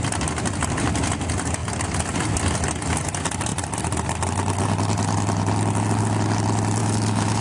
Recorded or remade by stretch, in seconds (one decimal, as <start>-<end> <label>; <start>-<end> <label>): 0.0-6.8 recorded; 6.8-7.4 remade